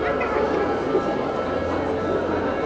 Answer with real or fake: real